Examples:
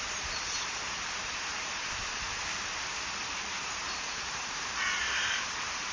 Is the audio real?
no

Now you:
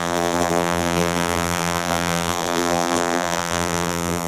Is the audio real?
no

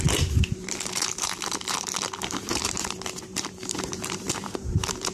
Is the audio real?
no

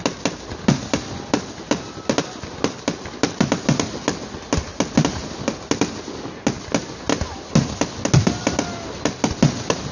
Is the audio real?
yes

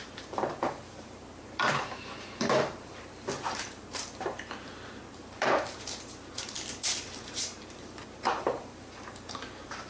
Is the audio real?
no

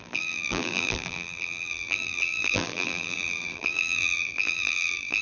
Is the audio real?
no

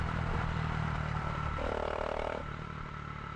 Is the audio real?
no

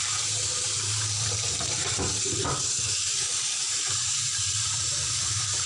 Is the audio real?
no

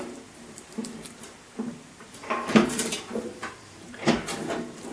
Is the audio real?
no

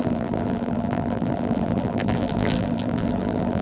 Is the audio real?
no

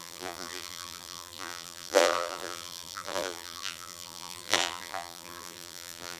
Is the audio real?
no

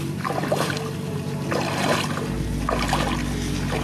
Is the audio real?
yes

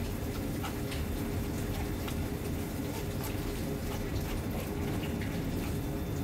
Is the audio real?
yes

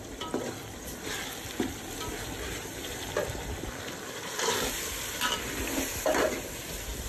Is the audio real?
no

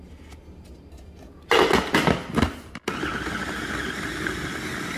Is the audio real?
yes